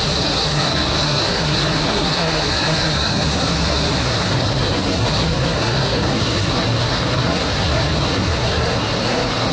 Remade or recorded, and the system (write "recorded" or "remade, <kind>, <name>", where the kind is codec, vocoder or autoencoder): remade, codec, SNAC